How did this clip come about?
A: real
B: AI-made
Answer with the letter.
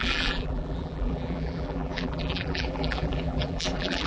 B